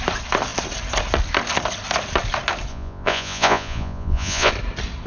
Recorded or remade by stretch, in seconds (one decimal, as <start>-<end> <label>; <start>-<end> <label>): 0.0-2.7 recorded; 2.7-4.5 remade; 4.5-5.1 recorded